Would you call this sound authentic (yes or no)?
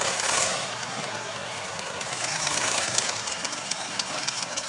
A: no